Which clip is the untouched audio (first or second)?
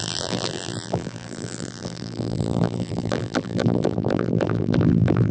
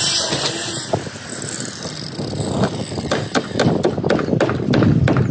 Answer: second